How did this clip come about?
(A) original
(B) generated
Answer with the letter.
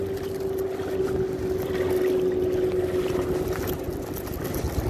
A